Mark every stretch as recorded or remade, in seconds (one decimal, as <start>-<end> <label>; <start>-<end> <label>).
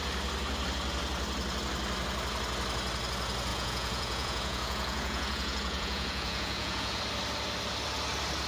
0.0-3.5 recorded; 3.5-7.0 remade; 7.0-8.5 recorded